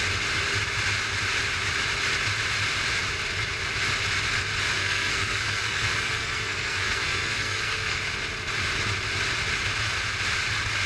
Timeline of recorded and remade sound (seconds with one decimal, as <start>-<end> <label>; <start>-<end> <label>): 0.0-4.8 recorded; 4.8-8.0 remade; 8.0-10.9 recorded